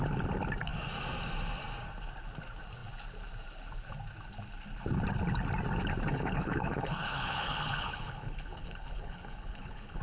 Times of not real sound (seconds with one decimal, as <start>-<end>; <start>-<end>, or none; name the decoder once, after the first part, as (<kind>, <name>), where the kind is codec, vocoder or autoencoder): 6.1-10.0 (codec, HILCodec)